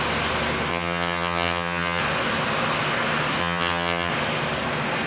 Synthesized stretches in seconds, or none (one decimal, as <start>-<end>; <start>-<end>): 0.7-2.0; 3.4-4.1